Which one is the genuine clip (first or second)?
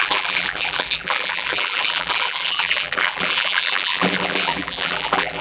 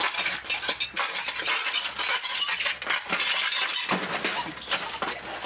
second